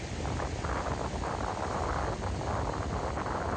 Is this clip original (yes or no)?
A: yes